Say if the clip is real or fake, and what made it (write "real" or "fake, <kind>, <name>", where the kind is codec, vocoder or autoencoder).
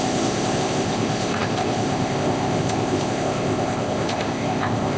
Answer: fake, codec, ZipCodec